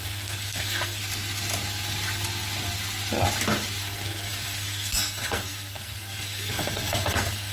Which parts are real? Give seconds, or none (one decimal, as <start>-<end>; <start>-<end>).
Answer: 1.0-3.8